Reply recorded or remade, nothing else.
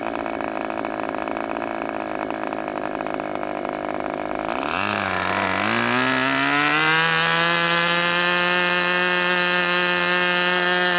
recorded